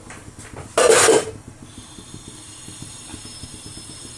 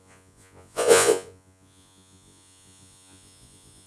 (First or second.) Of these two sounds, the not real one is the second